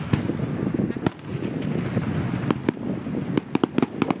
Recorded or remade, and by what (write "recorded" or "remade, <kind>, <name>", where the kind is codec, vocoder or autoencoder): recorded